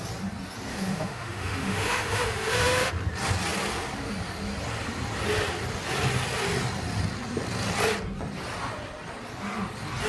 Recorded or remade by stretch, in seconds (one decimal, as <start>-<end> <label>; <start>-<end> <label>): 0.0-0.7 recorded; 0.7-2.9 remade; 2.9-10.1 recorded

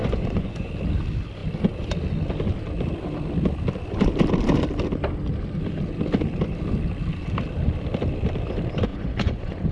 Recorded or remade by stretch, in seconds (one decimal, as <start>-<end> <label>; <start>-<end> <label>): 0.0-0.7 remade; 0.7-8.9 recorded; 8.9-9.7 remade

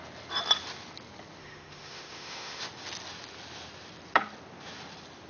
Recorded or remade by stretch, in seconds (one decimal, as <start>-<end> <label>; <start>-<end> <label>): 0.0-1.4 recorded; 1.4-2.6 remade; 2.6-5.3 recorded

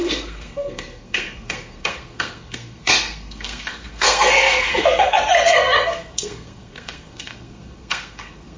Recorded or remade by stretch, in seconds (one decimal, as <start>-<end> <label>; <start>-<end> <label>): 0.0-8.6 remade

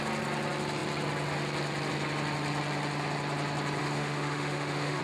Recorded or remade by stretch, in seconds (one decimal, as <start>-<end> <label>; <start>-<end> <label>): 0.0-3.8 recorded; 3.8-5.0 remade